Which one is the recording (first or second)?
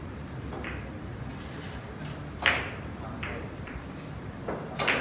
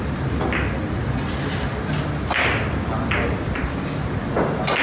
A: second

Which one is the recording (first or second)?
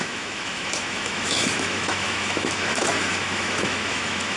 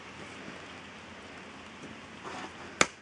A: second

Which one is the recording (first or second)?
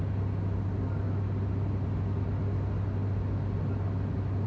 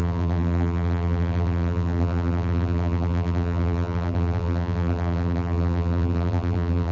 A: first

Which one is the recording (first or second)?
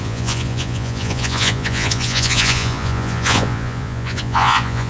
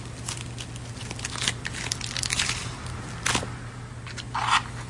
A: second